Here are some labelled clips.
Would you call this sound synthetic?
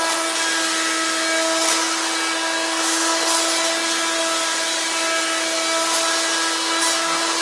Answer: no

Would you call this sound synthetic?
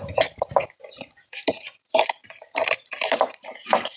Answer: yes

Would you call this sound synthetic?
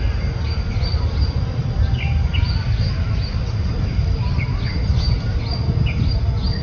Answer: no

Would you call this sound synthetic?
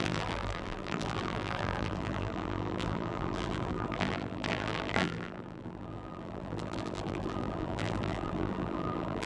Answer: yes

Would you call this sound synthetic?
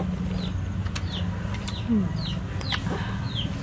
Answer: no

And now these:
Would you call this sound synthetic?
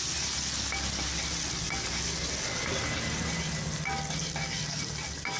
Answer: no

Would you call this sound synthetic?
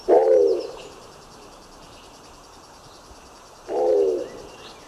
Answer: no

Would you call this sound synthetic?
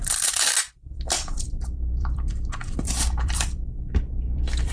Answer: yes